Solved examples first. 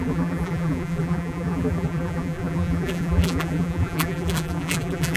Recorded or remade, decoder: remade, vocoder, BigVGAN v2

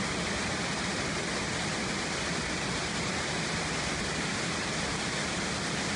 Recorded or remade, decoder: recorded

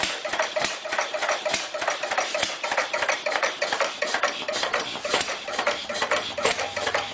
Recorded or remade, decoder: remade, vocoder, BigVGAN v2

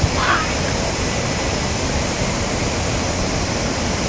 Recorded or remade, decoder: recorded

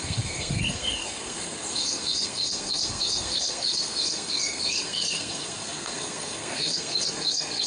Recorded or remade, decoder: remade, codec, SNAC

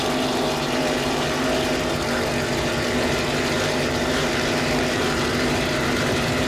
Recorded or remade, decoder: remade, vocoder, BigVGAN v2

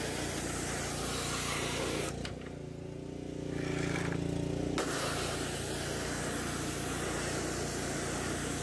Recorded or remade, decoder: recorded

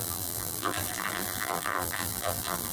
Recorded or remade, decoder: remade, vocoder, BigVGAN v2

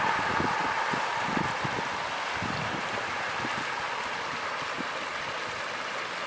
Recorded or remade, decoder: recorded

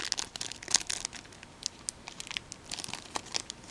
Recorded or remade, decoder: recorded